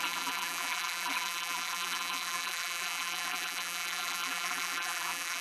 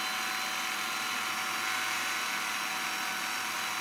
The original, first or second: second